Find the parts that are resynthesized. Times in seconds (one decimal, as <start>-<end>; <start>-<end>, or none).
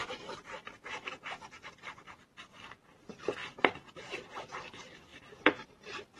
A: 0.0-1.7; 5.1-6.2